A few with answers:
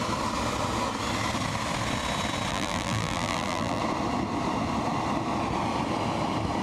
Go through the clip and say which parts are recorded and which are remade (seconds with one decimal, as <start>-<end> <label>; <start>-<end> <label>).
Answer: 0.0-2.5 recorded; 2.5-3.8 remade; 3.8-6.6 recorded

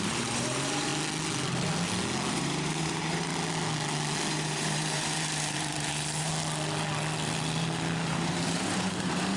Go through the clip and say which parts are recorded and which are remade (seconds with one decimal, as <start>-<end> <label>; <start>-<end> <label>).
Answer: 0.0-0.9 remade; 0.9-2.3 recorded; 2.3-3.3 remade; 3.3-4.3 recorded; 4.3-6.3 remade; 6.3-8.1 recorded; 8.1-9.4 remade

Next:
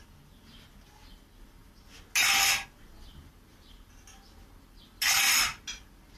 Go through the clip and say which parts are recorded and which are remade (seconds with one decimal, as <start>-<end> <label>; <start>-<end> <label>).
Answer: 0.0-6.2 recorded

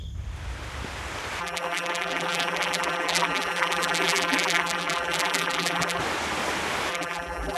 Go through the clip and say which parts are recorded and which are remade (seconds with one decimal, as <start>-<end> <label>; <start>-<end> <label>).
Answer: 0.0-1.4 recorded; 1.4-6.0 remade; 6.0-6.9 recorded; 6.9-7.6 remade

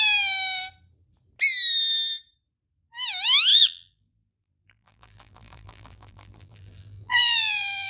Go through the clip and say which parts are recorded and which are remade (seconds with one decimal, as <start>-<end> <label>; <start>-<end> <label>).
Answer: 0.0-3.5 recorded; 3.5-7.9 remade